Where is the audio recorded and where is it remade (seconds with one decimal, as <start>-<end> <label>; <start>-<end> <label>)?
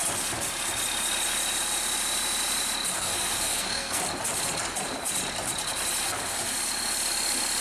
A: 0.0-2.9 recorded; 2.9-4.0 remade; 4.0-7.6 recorded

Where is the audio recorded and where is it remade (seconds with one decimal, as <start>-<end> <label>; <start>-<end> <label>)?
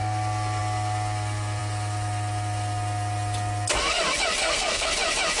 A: 0.0-4.4 recorded; 4.4-4.9 remade; 4.9-5.4 recorded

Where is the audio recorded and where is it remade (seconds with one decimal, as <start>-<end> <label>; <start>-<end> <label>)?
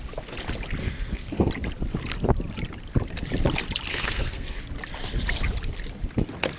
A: 0.0-0.8 recorded; 0.8-1.5 remade; 1.5-3.9 recorded; 3.9-4.6 remade; 4.6-6.6 recorded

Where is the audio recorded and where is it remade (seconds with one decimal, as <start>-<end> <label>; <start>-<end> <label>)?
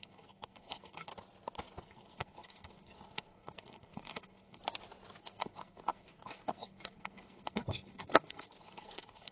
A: 0.0-1.1 remade; 1.1-1.8 recorded; 1.8-4.6 remade; 4.6-5.2 recorded; 5.2-9.3 remade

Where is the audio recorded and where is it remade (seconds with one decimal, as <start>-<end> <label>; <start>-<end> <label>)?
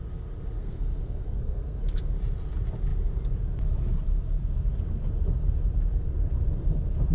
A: 0.0-0.6 recorded; 0.6-1.8 remade; 1.8-7.1 recorded